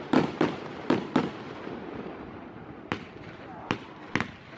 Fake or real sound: real